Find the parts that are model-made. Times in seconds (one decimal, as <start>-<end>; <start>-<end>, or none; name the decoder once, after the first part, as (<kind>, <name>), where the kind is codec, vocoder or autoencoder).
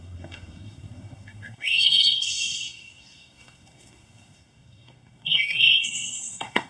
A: 0.0-6.7 (codec, SNAC)